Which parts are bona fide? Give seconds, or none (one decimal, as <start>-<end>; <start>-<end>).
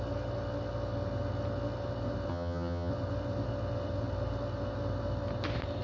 0.0-2.3; 2.9-5.8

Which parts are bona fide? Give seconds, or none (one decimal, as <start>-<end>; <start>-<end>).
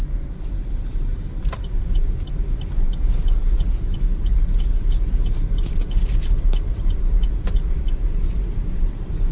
3.0-5.7